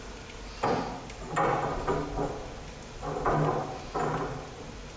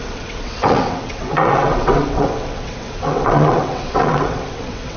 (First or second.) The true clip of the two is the first